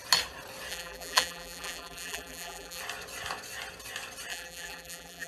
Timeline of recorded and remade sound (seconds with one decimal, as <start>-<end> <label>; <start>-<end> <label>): 0.0-0.7 recorded; 0.7-2.8 remade; 2.8-4.3 recorded; 4.3-5.3 remade